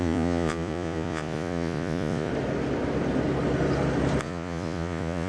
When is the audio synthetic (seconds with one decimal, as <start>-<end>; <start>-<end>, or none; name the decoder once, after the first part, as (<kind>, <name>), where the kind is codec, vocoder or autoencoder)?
0.0-2.3 (vocoder, Vocos); 4.2-5.3